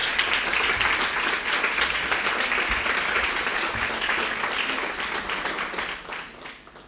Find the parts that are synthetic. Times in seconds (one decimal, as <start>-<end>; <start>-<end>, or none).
none